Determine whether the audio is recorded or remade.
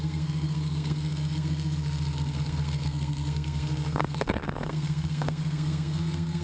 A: remade